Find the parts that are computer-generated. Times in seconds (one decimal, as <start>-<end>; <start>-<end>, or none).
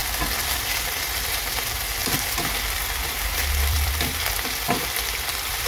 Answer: 0.5-5.7